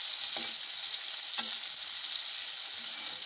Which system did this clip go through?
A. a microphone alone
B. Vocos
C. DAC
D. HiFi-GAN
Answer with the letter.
A